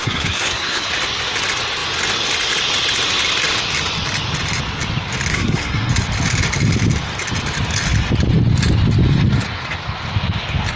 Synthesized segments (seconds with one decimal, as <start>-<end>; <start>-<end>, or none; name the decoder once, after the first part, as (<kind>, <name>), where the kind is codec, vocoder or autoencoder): 0.0-0.9 (codec, SNAC); 5.3-5.9